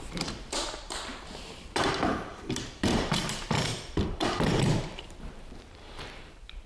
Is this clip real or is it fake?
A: fake